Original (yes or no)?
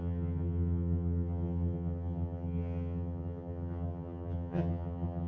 no